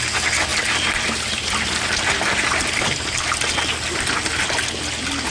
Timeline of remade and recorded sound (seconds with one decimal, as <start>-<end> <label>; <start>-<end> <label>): 0.0-5.3 recorded